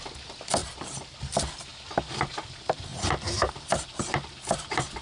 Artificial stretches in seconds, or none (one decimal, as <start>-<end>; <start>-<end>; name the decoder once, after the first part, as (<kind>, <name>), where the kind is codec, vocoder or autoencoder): 0.6-1.2 (vocoder, BigVGAN v2); 2.9-5.0